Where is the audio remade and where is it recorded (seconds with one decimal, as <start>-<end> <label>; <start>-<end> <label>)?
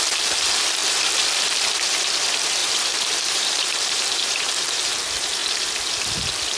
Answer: 0.0-0.8 recorded; 0.8-2.0 remade; 2.0-2.6 recorded; 2.6-5.0 remade; 5.0-6.6 recorded